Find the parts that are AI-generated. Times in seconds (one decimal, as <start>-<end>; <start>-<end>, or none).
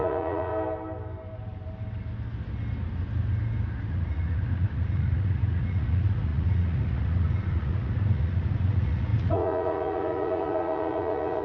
0.0-0.5; 3.9-11.4